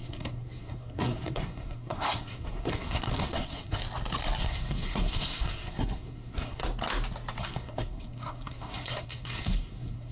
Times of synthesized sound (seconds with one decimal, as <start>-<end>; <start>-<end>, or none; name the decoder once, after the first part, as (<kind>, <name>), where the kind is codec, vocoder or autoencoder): 0.0-3.8 (codec, SNAC); 4.4-6.6; 7.4-10.1